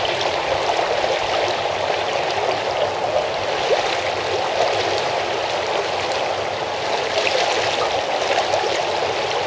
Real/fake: real